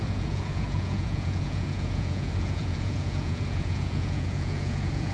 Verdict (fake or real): fake